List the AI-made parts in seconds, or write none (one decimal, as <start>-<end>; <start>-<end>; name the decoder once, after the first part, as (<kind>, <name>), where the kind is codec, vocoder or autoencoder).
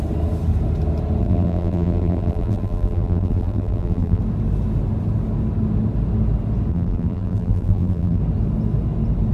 1.2-4.2 (vocoder, BigVGAN v2); 6.7-8.2